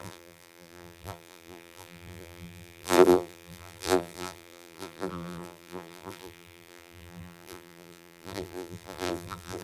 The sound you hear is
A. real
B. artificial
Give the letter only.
B